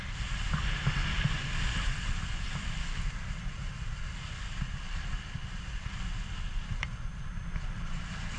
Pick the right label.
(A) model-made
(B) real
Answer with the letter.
B